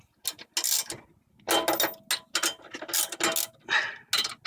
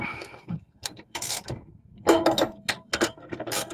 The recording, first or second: first